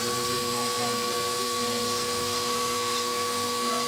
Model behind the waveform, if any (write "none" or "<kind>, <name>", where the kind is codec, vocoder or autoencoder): codec, SNAC